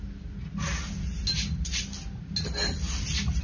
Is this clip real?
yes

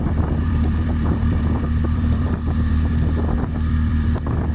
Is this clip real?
no